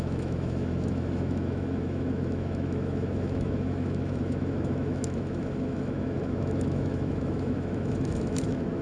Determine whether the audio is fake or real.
fake